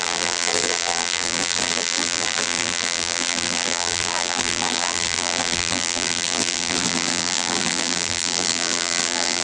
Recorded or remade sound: remade